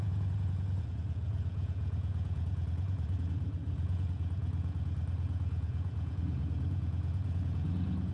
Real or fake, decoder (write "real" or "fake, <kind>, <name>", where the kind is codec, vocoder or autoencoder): fake, vocoder, Vocos